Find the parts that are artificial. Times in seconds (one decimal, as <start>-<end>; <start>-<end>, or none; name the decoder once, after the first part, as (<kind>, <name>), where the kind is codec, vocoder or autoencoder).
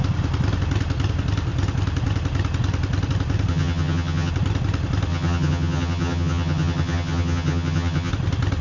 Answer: 3.5-4.3 (vocoder, HiFi-GAN); 5.1-8.1